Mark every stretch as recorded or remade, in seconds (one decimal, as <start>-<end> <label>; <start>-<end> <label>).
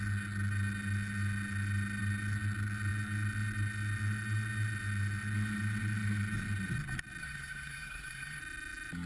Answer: 0.0-7.2 recorded; 7.2-8.4 remade; 8.4-9.1 recorded